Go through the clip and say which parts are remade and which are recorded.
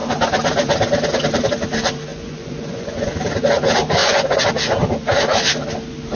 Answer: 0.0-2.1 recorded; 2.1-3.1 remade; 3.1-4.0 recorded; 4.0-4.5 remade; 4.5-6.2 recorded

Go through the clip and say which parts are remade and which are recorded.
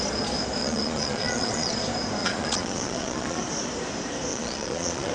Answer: 0.0-0.6 recorded; 0.6-1.7 remade; 1.7-2.2 recorded; 2.2-3.4 remade; 3.4-4.3 recorded; 4.3-5.1 remade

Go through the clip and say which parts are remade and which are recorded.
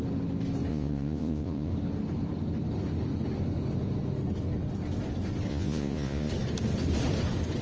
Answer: 0.0-0.7 recorded; 0.7-1.7 remade; 1.7-5.5 recorded; 5.5-6.3 remade; 6.3-7.6 recorded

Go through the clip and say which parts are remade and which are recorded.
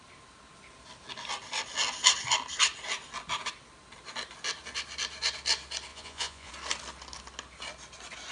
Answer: 0.0-5.9 recorded; 5.9-6.5 remade; 6.5-8.3 recorded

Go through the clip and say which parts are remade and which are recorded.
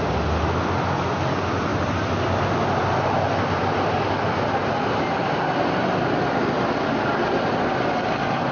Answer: 0.0-8.5 recorded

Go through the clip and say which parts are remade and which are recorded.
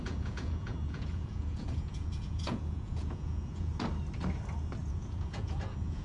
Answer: 0.0-3.7 remade; 3.7-4.8 recorded; 4.8-6.0 remade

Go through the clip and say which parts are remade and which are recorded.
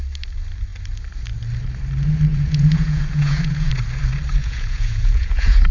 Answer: 0.0-2.3 recorded; 2.3-3.7 remade; 3.7-4.4 recorded; 4.4-5.7 remade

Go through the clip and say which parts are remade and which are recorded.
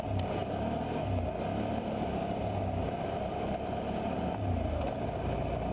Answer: 0.0-5.7 recorded